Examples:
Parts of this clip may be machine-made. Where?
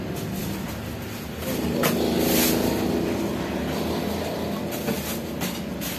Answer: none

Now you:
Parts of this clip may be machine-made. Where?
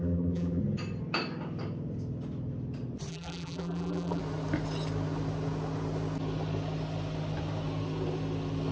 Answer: 0.0-0.6 (vocoder, BigVGAN v2); 3.1-4.2